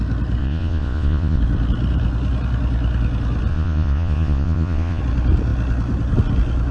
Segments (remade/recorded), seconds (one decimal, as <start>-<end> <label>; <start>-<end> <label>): 0.0-0.4 recorded; 0.4-1.4 remade; 1.4-3.5 recorded; 3.5-5.0 remade; 5.0-6.7 recorded